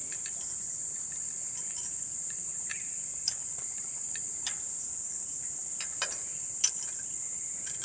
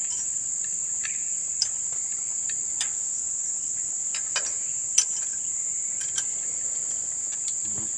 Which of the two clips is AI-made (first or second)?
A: first